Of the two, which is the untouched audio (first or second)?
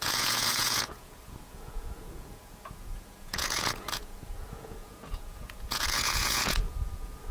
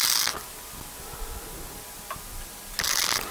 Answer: second